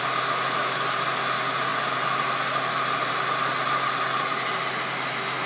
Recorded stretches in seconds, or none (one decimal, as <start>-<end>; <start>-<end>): 0.0-5.5